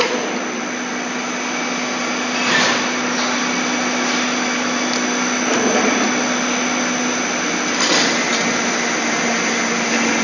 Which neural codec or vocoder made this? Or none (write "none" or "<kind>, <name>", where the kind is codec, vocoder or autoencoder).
none